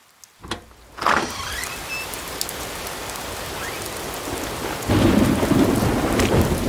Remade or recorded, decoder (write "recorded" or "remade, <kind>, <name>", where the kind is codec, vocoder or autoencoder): recorded